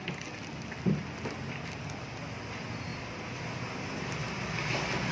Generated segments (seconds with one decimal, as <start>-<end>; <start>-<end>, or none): none